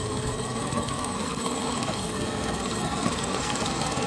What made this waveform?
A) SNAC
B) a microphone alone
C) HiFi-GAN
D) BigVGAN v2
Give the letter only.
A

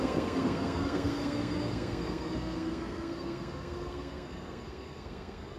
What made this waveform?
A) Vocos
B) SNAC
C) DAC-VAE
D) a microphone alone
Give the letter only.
B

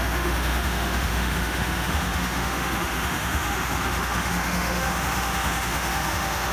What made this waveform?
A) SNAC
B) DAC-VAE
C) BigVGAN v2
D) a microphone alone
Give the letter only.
B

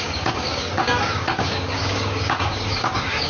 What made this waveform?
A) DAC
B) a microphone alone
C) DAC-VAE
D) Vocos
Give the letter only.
A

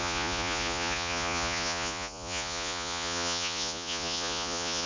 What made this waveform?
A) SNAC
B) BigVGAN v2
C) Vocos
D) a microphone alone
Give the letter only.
C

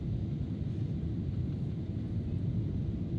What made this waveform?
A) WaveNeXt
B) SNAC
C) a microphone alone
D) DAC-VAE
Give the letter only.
C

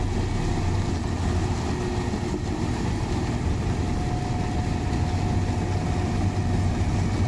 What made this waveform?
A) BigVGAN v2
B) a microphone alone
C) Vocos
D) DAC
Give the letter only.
B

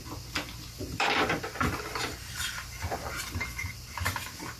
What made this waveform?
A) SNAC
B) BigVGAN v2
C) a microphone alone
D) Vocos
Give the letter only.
B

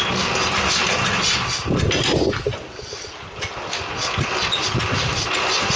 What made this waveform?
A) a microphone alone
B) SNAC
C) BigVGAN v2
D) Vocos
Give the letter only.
A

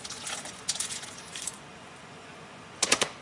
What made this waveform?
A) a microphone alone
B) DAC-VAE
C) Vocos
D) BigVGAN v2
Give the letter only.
C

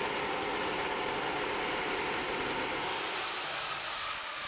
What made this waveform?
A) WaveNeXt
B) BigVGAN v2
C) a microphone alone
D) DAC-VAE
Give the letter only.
C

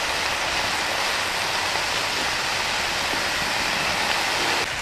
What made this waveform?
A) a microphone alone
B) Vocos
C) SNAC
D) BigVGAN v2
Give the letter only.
A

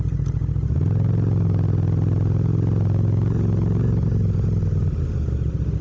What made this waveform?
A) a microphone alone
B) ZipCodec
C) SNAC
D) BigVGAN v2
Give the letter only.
A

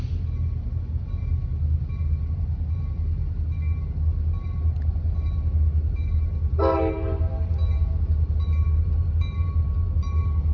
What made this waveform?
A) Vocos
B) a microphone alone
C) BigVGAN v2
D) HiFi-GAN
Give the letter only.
B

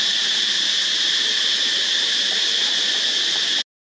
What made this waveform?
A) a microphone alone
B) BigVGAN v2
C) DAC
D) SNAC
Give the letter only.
A